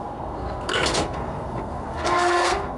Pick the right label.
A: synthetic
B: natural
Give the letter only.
A